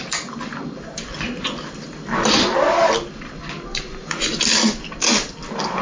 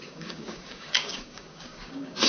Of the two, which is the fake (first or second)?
second